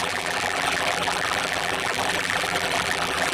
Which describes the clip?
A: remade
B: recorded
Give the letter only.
A